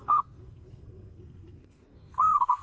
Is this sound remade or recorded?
remade